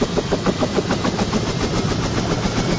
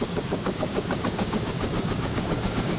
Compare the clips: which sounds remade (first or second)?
second